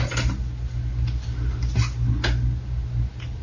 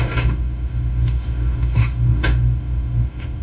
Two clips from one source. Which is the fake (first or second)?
second